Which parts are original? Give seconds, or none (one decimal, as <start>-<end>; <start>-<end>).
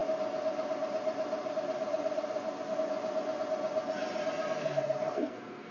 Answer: 0.0-4.6